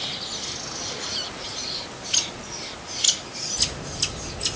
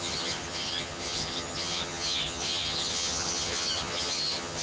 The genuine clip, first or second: first